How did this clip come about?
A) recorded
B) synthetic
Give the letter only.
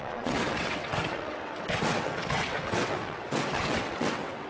B